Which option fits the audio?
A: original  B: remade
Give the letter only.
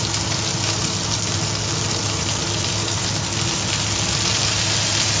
A